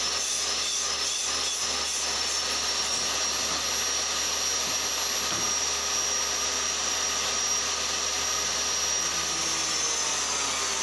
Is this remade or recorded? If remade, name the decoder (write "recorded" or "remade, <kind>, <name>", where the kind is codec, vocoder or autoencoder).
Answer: recorded